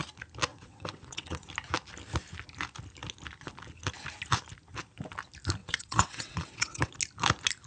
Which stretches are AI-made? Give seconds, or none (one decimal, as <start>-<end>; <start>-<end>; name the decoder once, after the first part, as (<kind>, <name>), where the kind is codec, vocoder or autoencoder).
0.5-1.5 (vocoder, WaveNeXt); 5.6-6.9